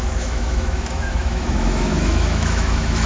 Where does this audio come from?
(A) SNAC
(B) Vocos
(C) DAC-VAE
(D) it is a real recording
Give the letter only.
C